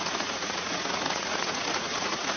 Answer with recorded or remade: remade